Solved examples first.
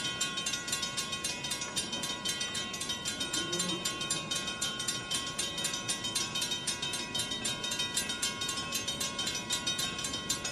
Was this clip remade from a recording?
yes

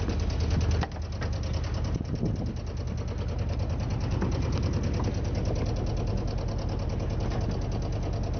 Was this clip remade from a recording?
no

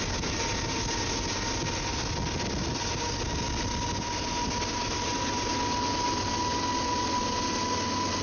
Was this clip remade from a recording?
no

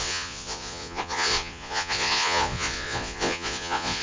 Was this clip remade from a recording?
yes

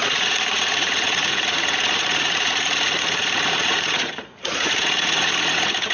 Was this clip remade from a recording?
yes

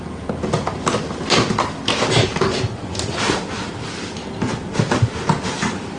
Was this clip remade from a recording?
no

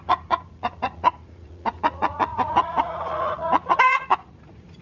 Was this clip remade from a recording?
yes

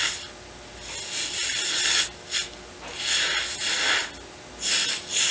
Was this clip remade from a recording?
no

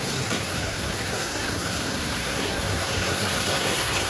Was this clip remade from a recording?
yes